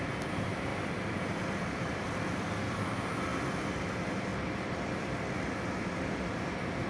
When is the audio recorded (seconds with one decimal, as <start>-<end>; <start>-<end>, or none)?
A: 3.3-3.9